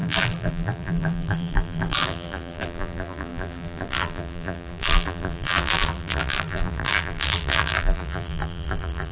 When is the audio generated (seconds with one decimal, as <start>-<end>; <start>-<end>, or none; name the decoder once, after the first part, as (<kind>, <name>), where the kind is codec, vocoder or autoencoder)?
0.0-9.1 (vocoder, BigVGAN v2)